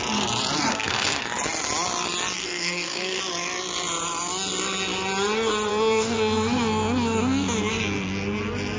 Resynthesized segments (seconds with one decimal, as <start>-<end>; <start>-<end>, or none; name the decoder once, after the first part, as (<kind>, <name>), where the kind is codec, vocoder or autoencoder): 0.7-1.2 (codec, SNAC); 2.4-3.2; 5.7-7.7